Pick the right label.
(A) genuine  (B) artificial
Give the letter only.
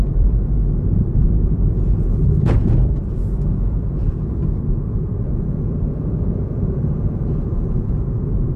B